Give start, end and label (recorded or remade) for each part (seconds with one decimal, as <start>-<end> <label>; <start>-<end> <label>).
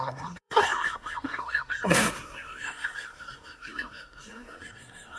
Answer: 0.0-5.2 remade